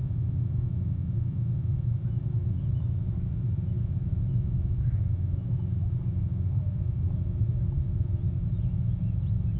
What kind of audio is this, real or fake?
real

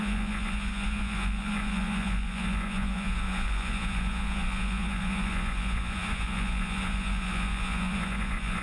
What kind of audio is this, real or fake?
fake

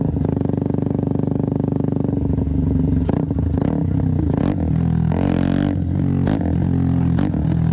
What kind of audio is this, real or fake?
real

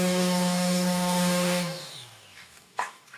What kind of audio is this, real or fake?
fake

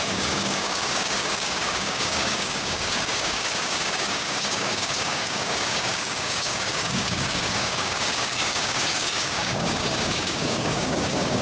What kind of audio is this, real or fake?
fake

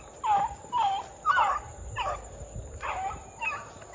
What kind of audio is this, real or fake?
real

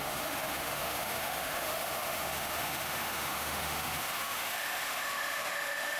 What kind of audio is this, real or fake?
fake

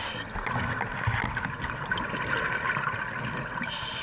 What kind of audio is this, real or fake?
real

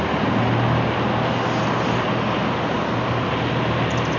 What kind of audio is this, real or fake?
real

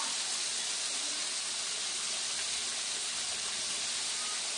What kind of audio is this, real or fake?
real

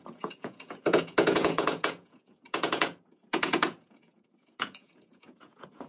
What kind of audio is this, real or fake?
fake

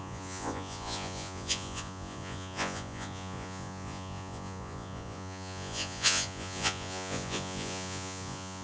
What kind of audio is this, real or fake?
fake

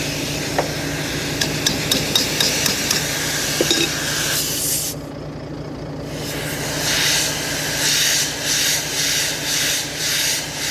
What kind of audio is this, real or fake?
real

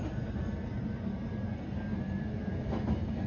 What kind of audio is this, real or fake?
real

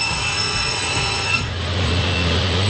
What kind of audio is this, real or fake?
fake